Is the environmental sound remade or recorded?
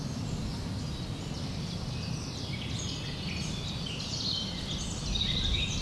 recorded